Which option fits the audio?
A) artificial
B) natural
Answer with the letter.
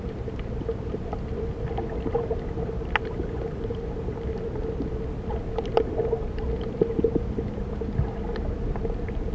B